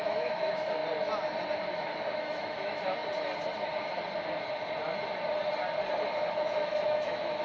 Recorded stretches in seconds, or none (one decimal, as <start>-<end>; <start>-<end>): 0.8-1.8; 3.0-6.3